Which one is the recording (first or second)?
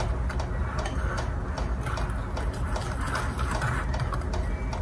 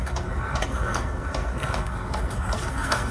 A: first